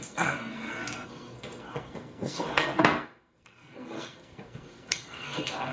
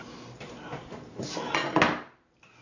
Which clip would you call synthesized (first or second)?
first